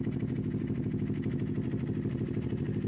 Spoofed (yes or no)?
no